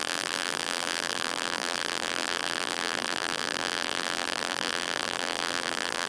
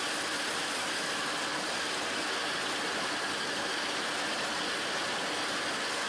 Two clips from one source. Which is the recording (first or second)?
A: second